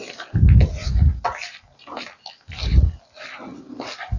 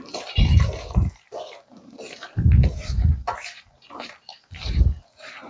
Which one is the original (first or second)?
first